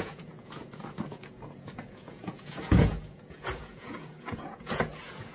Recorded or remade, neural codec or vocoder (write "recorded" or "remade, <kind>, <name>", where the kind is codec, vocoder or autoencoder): remade, vocoder, Vocos